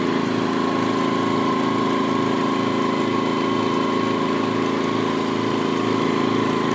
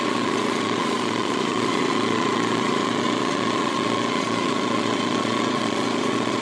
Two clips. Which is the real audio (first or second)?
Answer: first